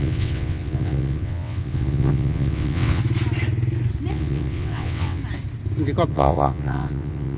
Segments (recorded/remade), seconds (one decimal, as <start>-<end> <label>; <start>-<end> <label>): 0.0-3.0 remade; 3.0-4.1 recorded; 4.1-5.2 remade; 5.2-6.1 recorded; 6.1-7.4 remade